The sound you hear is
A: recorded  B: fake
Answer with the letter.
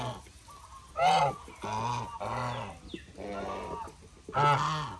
A